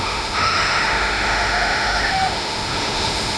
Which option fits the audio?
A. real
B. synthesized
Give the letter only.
B